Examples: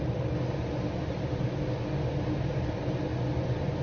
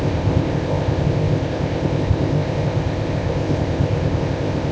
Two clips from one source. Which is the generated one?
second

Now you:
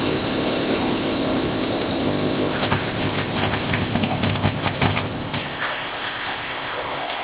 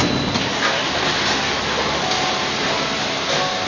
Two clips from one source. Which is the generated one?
first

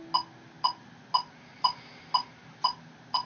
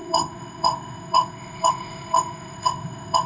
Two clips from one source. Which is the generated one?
second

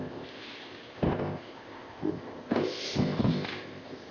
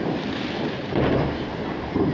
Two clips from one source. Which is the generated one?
first